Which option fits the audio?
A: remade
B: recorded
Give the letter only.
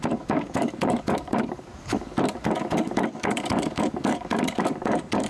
A